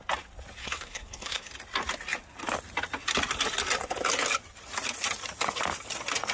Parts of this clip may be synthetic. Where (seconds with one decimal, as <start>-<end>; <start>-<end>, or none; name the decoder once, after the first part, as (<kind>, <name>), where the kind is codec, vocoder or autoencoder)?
0.6-1.5 (codec, SNAC)

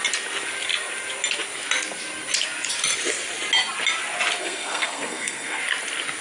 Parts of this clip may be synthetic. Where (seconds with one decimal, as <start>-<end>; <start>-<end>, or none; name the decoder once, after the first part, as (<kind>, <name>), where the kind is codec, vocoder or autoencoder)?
4.4-5.6 (codec, SNAC)

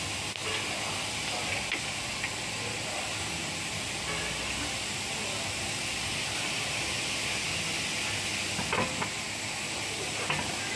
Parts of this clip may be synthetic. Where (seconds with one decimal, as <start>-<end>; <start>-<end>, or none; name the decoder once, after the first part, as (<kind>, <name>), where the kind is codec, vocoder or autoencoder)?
none

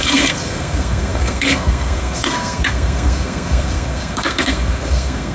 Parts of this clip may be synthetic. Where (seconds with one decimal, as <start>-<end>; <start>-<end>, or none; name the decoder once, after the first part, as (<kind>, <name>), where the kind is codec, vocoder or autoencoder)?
0.0-5.3 (codec, SNAC)

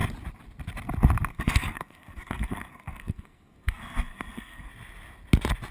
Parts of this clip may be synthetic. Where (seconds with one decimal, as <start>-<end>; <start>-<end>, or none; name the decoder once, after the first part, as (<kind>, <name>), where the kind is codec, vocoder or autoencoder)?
1.3-4.7 (codec, SNAC)

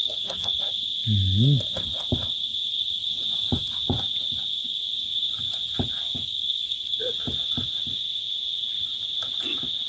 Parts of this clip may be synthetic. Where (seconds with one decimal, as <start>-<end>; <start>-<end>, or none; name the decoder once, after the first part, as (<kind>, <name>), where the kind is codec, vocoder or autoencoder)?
0.0-0.6 (codec, SNAC); 6.2-7.0

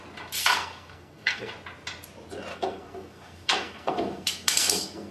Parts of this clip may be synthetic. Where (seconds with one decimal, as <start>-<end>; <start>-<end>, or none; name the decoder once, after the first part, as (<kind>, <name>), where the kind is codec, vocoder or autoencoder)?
0.4-1.5 (codec, SNAC); 2.5-5.1